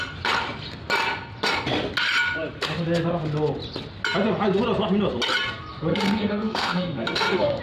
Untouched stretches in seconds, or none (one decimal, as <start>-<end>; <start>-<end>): 0.0-5.9